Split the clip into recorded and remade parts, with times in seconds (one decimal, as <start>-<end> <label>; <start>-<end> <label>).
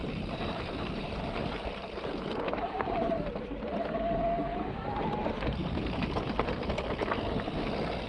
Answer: 0.0-3.3 remade; 3.3-4.5 recorded; 4.5-6.7 remade; 6.7-8.1 recorded